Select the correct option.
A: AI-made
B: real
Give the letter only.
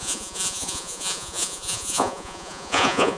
A